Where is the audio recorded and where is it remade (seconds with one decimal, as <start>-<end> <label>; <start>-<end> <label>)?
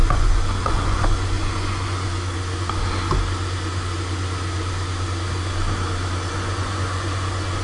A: 0.0-2.1 remade; 2.1-6.3 recorded; 6.3-7.6 remade